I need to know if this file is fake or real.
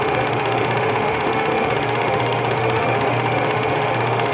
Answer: fake